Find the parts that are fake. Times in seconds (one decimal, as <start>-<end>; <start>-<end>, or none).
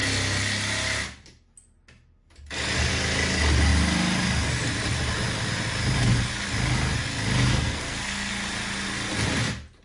7.5-8.3